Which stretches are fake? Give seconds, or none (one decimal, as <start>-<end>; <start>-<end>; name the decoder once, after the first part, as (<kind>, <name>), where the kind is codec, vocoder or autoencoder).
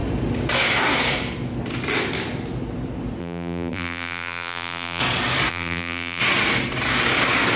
3.2-5.0 (vocoder, BigVGAN v2); 5.5-6.2